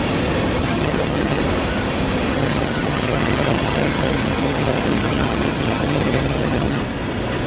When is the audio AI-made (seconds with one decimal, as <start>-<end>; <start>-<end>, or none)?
0.6-1.4; 2.3-6.8